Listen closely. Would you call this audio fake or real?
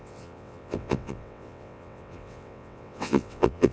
fake